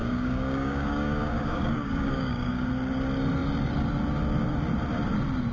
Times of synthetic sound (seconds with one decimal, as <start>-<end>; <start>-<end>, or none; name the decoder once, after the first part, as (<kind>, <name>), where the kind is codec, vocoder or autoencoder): 0.0-2.7 (codec, DAC)